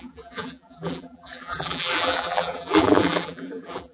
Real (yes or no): no